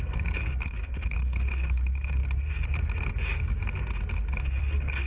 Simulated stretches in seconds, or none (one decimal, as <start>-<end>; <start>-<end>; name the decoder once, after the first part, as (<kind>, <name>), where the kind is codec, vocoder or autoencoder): 0.0-2.2 (codec, DAC); 3.1-3.6; 4.6-5.1